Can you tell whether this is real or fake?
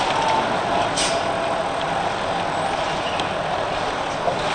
real